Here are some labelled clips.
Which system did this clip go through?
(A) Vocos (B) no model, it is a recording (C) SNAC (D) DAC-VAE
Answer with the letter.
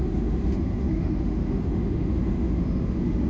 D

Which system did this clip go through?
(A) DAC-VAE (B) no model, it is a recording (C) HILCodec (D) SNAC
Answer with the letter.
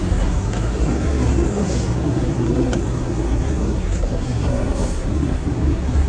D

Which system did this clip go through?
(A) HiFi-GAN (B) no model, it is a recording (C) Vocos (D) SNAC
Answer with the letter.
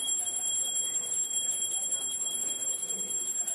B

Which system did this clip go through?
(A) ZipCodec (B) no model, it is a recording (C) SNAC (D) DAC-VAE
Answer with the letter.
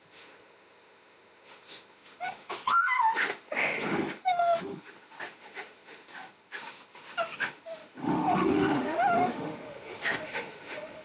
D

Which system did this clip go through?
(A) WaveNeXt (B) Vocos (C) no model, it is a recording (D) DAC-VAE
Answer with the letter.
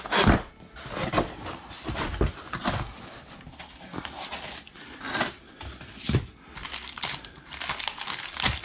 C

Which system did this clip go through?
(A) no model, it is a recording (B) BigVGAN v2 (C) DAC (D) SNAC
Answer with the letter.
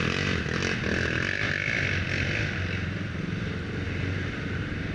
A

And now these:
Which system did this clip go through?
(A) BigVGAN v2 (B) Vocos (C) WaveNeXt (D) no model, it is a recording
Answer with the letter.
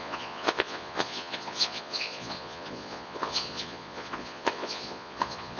B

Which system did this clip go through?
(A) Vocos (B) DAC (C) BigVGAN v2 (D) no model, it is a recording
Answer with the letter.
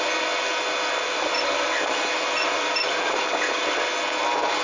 D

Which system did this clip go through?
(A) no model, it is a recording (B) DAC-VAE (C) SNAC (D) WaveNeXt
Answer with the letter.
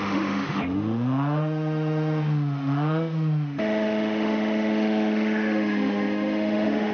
B